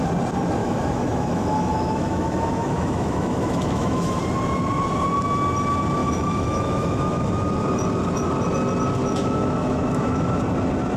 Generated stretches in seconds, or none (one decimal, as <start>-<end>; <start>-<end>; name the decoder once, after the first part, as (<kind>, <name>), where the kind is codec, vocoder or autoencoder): 0.6-4.2 (autoencoder, DAC-VAE); 6.0-7.3; 9.0-10.4